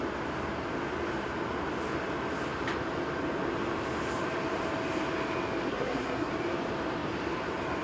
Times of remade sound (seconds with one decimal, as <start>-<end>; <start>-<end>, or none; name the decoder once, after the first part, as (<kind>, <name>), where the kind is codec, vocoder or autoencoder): 5.7-6.3 (codec, SNAC)